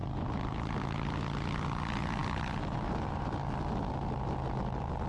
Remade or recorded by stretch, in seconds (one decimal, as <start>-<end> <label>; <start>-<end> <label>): 0.0-5.1 recorded